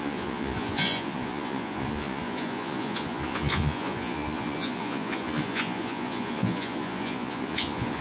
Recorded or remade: remade